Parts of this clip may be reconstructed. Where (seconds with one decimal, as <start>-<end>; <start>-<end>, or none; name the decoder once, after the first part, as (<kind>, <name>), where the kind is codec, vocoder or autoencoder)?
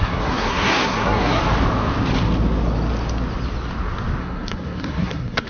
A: 0.0-1.4 (codec, SNAC); 4.2-5.5